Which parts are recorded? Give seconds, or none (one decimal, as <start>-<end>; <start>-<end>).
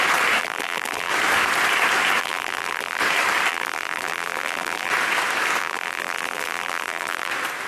0.0-0.4; 1.1-2.2; 3.0-3.5; 4.9-5.6; 7.3-7.7